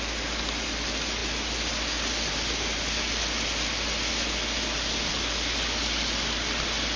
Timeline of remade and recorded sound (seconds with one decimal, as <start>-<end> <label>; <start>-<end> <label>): 0.0-7.0 recorded